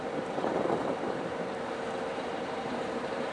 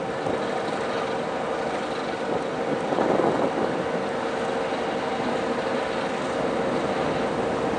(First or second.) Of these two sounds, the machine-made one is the first